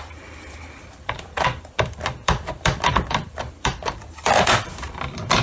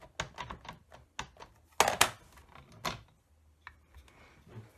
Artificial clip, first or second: first